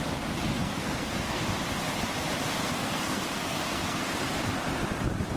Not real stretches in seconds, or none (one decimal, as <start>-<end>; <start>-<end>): 0.6-1.4; 2.6-4.2